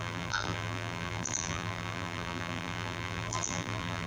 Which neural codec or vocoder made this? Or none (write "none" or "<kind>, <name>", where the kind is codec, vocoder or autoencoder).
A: vocoder, BigVGAN v2